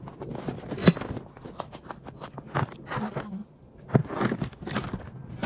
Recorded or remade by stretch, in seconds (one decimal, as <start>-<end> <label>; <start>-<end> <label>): 0.0-3.4 recorded; 3.4-4.0 remade; 4.0-5.5 recorded